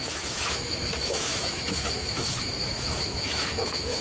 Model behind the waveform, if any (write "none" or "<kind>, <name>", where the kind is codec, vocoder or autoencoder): autoencoder, DAC-VAE